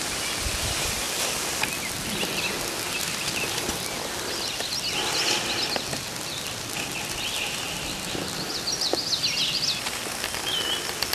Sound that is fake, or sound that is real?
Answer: real